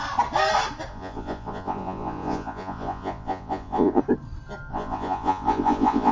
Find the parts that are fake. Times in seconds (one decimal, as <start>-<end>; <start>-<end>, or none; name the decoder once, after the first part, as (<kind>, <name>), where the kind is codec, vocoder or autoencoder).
0.9-4.0 (vocoder, Vocos); 4.7-6.1

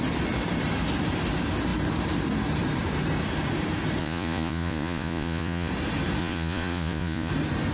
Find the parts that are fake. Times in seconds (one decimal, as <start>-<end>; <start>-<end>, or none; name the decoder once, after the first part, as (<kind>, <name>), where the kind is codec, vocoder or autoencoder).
4.0-5.7 (vocoder, Vocos); 6.2-7.3

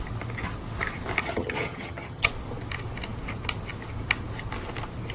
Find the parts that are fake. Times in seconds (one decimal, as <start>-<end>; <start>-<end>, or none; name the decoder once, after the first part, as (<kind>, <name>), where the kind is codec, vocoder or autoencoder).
1.2-2.3 (vocoder, HiFi-GAN)

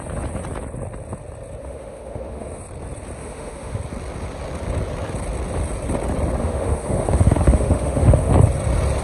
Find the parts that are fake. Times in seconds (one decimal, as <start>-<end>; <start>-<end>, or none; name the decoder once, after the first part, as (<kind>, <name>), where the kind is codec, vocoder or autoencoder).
1.6-2.6 (autoencoder, DAC-VAE); 3.2-3.8; 6.4-8.3

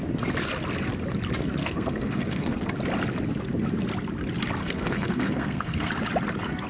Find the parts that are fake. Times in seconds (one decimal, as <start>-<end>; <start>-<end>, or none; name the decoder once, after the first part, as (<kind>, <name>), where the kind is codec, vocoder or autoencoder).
1.6-2.7 (codec, SNAC); 4.6-5.9

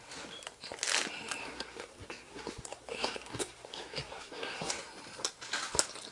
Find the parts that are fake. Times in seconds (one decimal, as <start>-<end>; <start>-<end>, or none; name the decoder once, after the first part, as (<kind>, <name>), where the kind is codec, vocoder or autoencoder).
1.4-4.7 (codec, SNAC)